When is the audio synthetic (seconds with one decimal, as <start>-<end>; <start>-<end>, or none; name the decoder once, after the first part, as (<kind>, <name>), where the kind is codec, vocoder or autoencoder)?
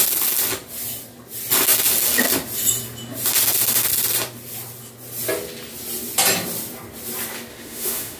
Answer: 7.5-8.2 (autoencoder, DAC-VAE)